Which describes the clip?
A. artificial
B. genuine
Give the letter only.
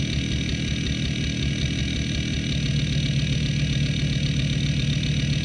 B